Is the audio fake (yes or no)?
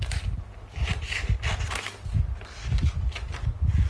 no